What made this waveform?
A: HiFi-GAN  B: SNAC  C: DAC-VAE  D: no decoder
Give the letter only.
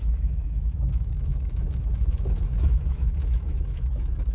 C